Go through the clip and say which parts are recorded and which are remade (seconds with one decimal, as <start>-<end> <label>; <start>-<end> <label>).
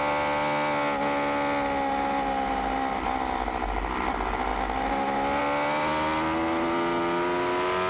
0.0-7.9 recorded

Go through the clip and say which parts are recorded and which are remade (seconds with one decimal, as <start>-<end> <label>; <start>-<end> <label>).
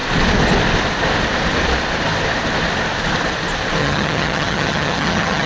0.0-3.8 recorded; 3.8-5.5 remade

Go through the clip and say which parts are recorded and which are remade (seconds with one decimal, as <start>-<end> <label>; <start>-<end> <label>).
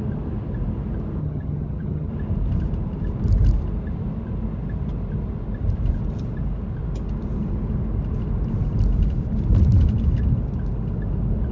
0.0-1.2 recorded; 1.2-2.1 remade; 2.1-11.5 recorded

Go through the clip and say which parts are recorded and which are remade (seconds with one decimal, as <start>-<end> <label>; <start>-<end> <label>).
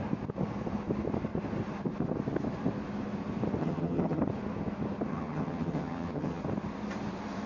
0.0-3.6 recorded; 3.6-4.2 remade; 4.2-5.1 recorded; 5.1-6.4 remade; 6.4-7.5 recorded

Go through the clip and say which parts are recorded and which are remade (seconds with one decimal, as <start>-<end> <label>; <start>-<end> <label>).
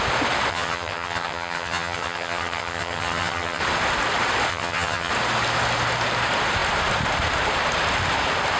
0.0-0.5 recorded; 0.5-3.6 remade; 3.6-4.5 recorded; 4.5-5.1 remade; 5.1-8.6 recorded